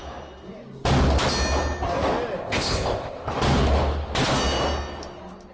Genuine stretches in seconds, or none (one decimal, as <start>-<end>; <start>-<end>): 0.0-2.4; 3.3-5.5